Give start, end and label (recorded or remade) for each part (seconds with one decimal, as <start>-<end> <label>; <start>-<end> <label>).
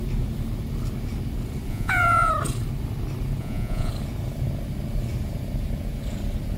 0.0-1.7 recorded; 1.7-2.3 remade; 2.3-3.4 recorded; 3.4-3.9 remade; 3.9-6.6 recorded